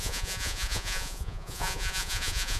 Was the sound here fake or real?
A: fake